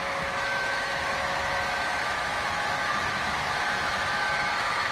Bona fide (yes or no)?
no